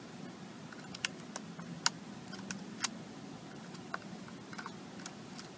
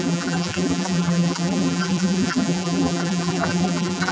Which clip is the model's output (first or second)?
second